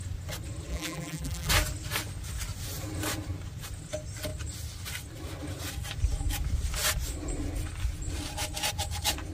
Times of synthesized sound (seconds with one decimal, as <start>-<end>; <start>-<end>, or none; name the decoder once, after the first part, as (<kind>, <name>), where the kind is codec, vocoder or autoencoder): 0.7-1.5 (vocoder, BigVGAN v2)